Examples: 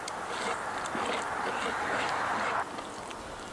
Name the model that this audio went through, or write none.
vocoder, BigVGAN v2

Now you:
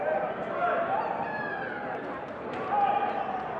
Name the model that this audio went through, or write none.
vocoder, BigVGAN v2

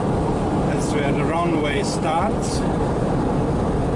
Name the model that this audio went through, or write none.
vocoder, BigVGAN v2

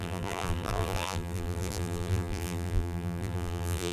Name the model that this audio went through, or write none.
vocoder, BigVGAN v2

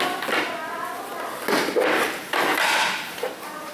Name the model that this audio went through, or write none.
none